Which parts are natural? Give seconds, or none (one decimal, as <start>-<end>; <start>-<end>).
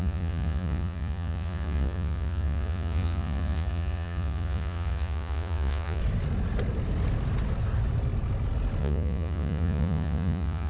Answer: 6.0-8.8